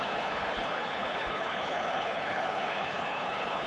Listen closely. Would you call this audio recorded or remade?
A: remade